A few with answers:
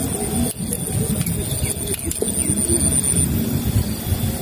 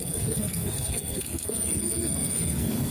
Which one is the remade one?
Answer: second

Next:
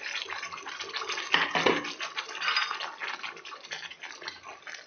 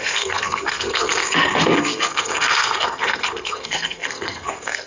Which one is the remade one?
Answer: second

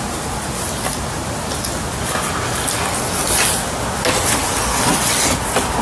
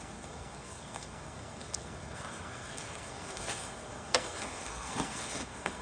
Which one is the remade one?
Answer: second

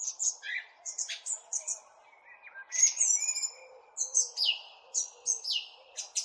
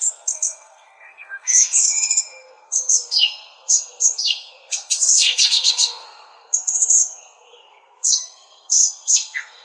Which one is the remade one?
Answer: second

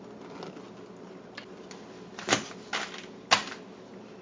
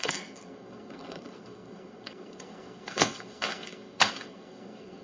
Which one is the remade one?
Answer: second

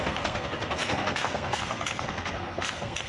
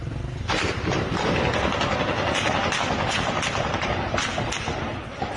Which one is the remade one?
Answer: first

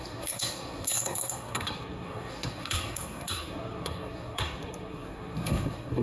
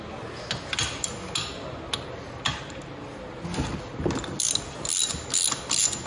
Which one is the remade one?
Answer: first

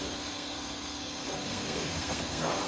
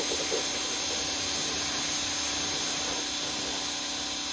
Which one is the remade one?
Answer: first